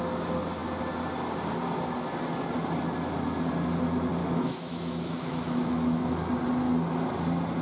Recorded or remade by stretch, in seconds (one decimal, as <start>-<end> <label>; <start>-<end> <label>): 0.0-4.2 recorded; 4.2-6.1 remade; 6.1-7.6 recorded